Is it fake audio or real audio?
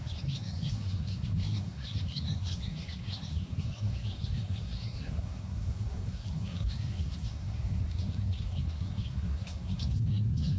fake